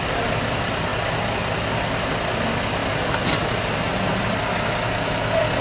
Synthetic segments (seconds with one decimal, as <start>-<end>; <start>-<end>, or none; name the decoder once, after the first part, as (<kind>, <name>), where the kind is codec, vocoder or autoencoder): none